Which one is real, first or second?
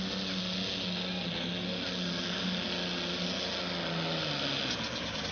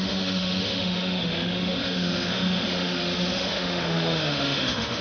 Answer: first